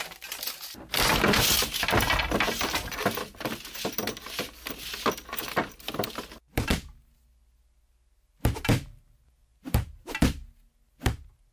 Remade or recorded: recorded